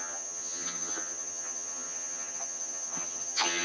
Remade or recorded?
remade